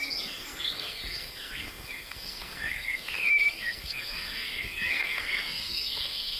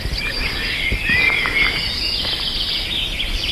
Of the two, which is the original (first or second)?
second